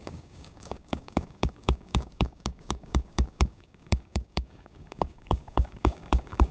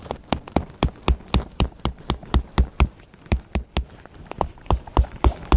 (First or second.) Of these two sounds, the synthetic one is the first